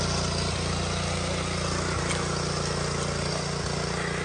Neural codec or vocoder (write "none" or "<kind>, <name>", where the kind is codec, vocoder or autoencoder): none